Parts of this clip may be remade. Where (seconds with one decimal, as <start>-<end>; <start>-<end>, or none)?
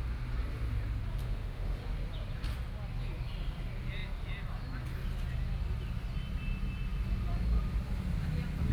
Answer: 1.2-1.8